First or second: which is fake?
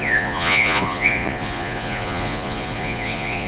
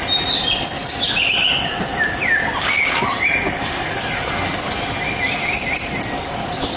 first